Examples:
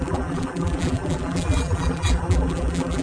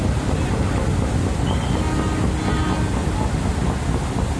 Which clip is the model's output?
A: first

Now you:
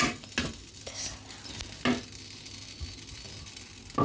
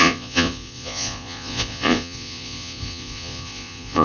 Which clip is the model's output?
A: second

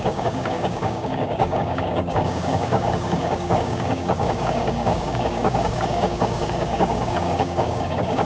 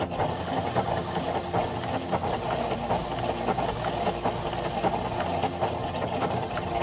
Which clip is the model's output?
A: first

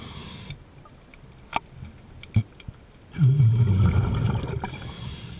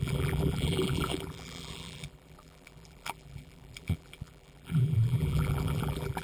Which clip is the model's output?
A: second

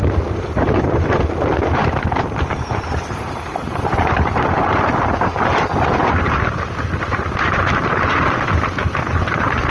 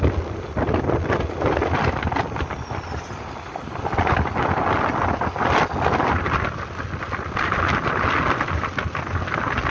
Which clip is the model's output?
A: first